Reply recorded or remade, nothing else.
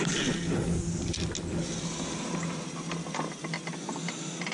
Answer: recorded